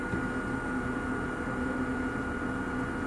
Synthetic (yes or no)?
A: no